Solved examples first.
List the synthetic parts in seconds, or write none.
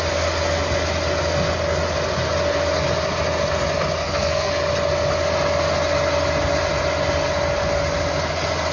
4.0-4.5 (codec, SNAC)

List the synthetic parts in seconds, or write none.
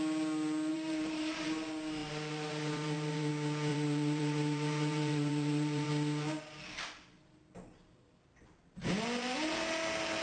0.7-1.3 (vocoder, BigVGAN v2); 2.0-3.3; 3.7-5.9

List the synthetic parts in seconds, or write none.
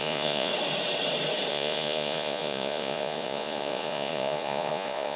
0.0-0.5 (vocoder, Vocos); 1.5-5.2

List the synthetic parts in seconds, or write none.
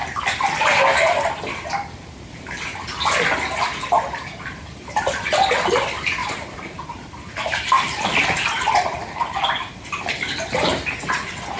6.2-8.7 (vocoder, BigVGAN v2)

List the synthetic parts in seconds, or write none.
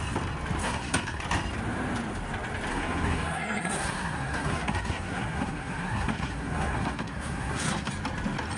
0.6-1.2 (codec, SNAC); 2.7-7.9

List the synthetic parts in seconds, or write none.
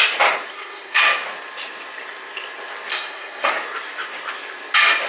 0.5-1.0 (codec, SNAC); 2.9-3.5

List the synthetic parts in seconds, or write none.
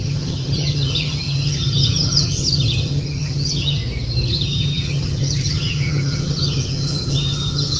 0.0-3.8 (vocoder, HiFi-GAN); 4.3-7.8